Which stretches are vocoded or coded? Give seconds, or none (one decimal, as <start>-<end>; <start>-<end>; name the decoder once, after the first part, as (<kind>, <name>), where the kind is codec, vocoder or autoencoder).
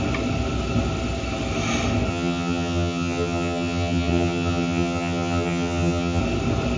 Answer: 2.1-6.2 (vocoder, HiFi-GAN)